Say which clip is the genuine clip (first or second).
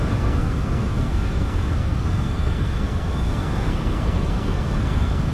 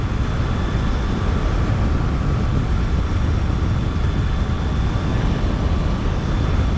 second